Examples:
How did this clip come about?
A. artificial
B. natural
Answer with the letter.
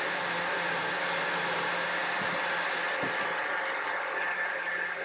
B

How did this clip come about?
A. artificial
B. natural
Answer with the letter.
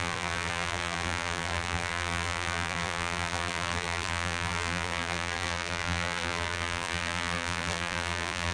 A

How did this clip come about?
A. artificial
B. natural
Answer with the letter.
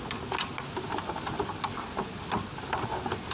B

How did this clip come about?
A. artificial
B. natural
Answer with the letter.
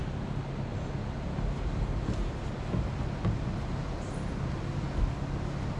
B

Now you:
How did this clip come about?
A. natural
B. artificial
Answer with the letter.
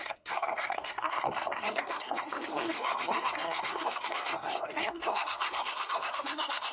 B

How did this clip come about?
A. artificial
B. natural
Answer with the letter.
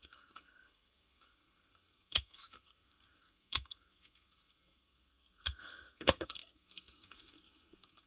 A